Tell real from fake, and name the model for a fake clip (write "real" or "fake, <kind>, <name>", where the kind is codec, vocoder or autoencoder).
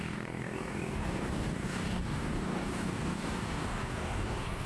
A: fake, codec, DAC